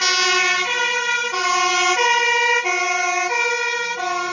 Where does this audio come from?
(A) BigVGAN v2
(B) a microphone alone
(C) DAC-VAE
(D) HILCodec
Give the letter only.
B